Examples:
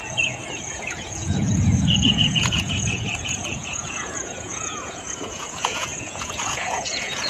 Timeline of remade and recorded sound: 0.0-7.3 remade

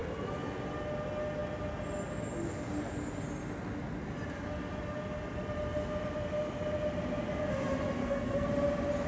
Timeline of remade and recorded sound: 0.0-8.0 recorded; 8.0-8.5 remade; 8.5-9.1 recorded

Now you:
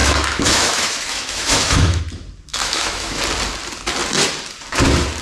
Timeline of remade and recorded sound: 0.0-2.0 remade; 2.0-2.5 recorded; 2.5-3.2 remade; 3.2-5.2 recorded